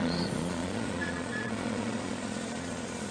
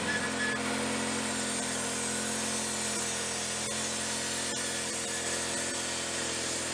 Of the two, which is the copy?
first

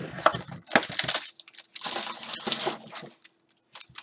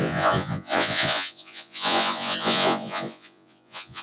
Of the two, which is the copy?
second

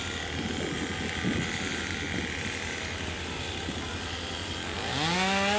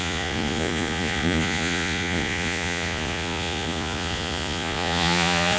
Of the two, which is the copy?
second